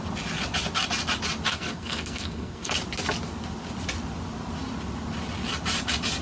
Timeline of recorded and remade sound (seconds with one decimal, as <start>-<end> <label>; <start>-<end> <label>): 0.0-1.5 recorded; 1.5-2.7 remade; 2.7-6.2 recorded